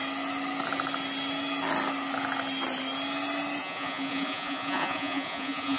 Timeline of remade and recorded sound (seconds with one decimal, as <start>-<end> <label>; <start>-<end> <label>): 0.0-3.6 recorded; 3.6-5.8 remade